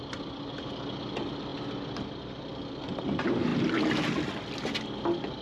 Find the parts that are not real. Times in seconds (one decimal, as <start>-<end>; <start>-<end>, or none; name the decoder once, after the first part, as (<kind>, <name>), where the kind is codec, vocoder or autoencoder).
none